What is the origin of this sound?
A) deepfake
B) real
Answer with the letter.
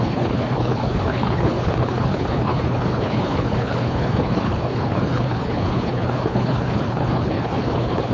A